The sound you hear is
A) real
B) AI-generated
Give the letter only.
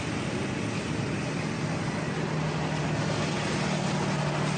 A